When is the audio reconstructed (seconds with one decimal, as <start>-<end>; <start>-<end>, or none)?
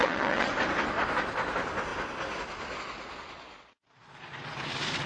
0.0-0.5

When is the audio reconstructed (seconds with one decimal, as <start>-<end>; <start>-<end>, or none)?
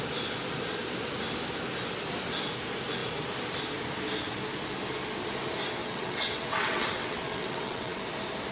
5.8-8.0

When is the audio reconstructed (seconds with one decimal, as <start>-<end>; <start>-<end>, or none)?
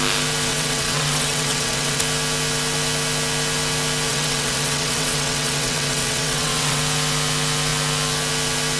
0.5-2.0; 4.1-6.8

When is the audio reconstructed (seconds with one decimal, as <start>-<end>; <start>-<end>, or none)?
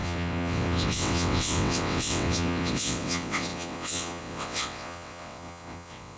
0.0-6.2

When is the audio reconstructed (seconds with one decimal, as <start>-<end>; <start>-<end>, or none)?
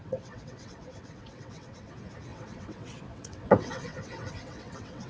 0.0-1.9; 2.3-5.1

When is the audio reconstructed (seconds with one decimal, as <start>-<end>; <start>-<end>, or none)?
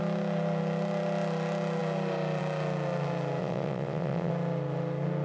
3.4-4.3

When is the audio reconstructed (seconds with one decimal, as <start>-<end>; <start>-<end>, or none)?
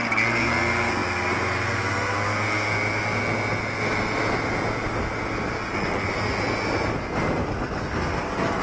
none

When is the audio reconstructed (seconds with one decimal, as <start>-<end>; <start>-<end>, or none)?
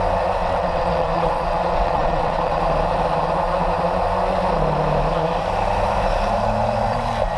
0.4-2.6